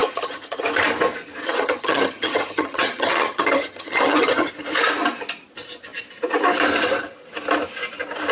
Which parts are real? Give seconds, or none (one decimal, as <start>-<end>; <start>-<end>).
0.6-1.4; 4.5-8.3